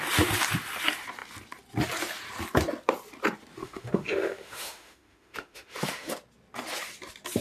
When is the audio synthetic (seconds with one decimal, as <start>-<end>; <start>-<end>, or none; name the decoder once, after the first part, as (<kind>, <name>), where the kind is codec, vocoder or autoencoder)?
3.6-6.1 (autoencoder, DAC-VAE)

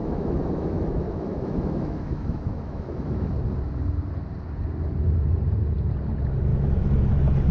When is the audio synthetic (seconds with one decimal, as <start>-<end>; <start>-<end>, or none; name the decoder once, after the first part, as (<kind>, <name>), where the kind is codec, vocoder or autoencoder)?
0.0-3.3 (autoencoder, DAC-VAE); 6.5-7.1

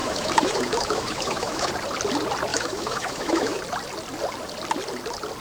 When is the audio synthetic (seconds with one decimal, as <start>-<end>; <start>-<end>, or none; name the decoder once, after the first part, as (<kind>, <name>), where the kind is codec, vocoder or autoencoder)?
0.0-1.7 (autoencoder, DAC-VAE); 2.5-3.6

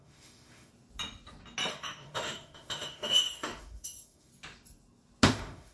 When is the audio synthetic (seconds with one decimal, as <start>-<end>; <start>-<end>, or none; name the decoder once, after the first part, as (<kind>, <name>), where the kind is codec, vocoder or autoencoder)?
0.0-0.7 (autoencoder, DAC-VAE); 1.7-4.3; 5.3-5.7

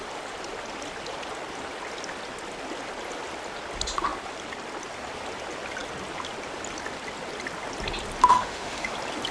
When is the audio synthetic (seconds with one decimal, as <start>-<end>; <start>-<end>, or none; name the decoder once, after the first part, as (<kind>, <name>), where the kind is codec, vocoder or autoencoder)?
8.3-8.9 (autoencoder, DAC-VAE)